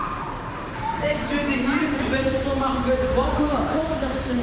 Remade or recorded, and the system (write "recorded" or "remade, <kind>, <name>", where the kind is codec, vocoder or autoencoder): remade, vocoder, BigVGAN v2